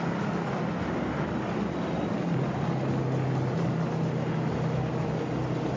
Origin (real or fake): real